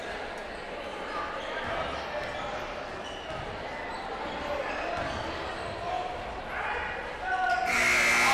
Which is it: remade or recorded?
recorded